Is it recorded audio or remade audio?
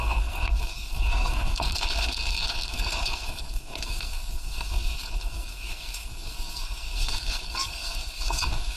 remade